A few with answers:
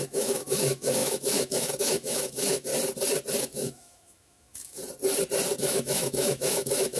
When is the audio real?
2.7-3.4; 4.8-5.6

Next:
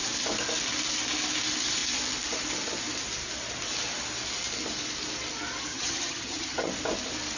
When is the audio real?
0.0-5.7; 6.7-7.4

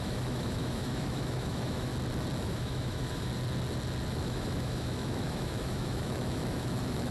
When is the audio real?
1.9-2.4; 3.3-4.1

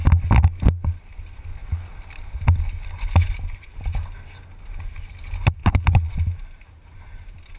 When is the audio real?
0.0-5.6; 6.1-7.6

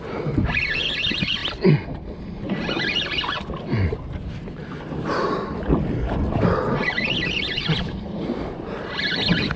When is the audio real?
0.0-6.8; 8.6-9.6